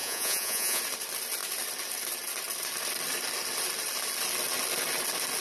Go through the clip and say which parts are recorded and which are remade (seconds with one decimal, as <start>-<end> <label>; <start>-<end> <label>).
0.0-0.8 remade; 0.8-5.4 recorded